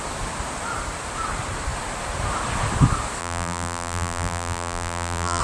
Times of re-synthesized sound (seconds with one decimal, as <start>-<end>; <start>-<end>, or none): 3.2-5.4